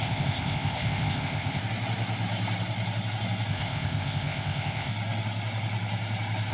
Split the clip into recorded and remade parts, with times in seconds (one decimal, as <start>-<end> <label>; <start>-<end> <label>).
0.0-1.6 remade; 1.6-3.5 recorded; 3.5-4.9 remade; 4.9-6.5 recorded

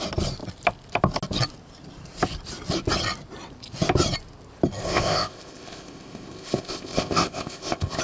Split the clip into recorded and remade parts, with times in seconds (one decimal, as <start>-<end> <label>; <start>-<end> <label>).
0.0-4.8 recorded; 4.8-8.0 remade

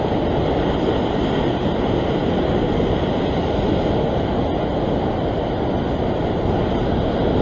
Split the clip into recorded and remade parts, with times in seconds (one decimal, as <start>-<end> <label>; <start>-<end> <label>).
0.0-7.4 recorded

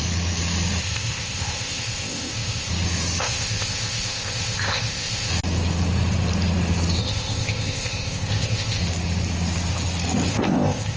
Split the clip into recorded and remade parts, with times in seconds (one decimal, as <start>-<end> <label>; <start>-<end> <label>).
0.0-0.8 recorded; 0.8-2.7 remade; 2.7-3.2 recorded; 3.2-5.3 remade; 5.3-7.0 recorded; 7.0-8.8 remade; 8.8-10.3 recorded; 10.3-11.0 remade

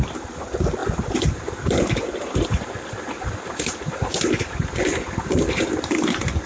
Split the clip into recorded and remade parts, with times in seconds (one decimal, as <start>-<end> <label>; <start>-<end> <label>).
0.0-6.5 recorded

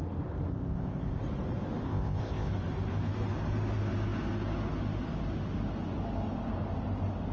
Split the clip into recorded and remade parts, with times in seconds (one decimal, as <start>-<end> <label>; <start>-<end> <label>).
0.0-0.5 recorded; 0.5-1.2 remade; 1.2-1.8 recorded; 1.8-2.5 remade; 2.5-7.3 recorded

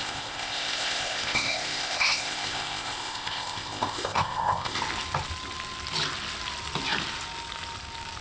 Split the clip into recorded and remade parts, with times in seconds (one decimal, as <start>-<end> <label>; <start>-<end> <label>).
0.0-4.8 remade; 4.8-8.2 recorded

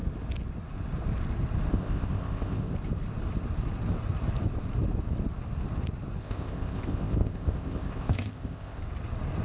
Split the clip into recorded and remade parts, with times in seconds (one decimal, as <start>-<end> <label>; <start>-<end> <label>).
0.0-1.7 recorded; 1.7-2.7 remade; 2.7-6.2 recorded; 6.2-8.8 remade; 8.8-9.4 recorded